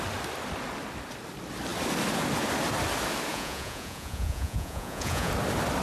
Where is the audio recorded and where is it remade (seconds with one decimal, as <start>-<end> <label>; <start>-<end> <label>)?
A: 0.0-3.3 recorded; 3.3-5.3 remade; 5.3-5.8 recorded